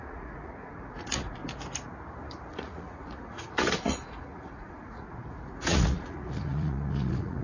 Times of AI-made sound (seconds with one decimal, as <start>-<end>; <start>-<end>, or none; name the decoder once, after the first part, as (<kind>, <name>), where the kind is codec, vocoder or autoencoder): 0.0-1.4 (vocoder, Vocos); 2.5-7.4